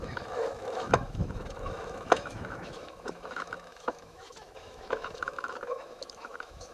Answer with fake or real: fake